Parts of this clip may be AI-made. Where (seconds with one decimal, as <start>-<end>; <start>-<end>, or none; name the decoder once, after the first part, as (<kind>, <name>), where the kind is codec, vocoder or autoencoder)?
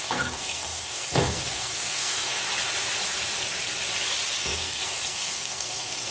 0.0-2.4 (codec, SNAC); 4.4-6.1